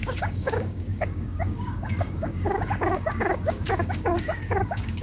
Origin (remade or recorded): remade